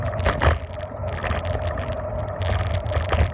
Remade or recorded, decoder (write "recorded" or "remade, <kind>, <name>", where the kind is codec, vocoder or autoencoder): recorded